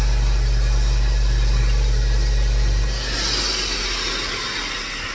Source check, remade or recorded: recorded